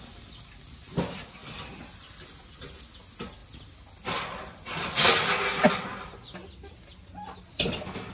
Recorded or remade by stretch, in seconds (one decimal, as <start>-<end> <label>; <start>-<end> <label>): 0.0-8.1 recorded

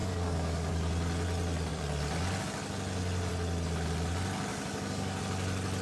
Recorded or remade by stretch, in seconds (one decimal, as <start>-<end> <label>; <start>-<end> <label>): 0.0-0.7 remade; 0.7-4.5 recorded; 4.5-5.2 remade; 5.2-5.8 recorded

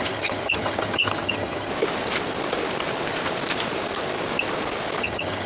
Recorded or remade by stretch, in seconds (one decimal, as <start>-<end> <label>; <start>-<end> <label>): 0.0-1.7 remade; 1.7-5.0 recorded; 5.0-5.5 remade

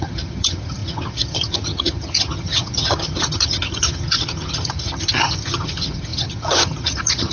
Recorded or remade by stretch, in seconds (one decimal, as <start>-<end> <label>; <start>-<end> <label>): 0.0-7.3 remade